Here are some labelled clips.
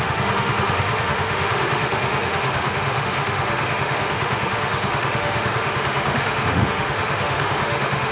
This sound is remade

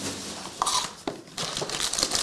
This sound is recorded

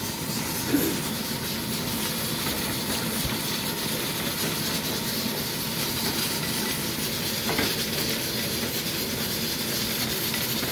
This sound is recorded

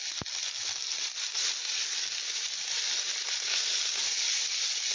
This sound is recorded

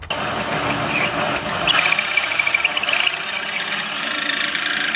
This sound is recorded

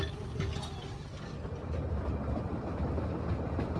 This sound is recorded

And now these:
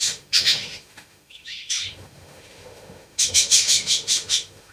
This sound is remade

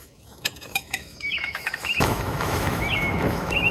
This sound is remade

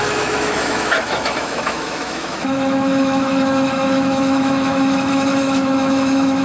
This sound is remade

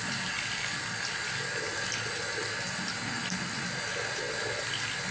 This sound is recorded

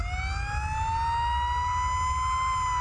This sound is recorded